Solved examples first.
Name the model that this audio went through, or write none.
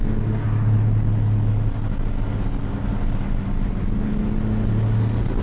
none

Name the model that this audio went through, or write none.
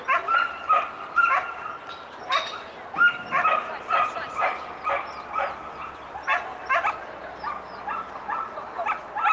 none